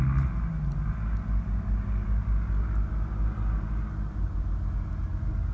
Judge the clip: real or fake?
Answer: real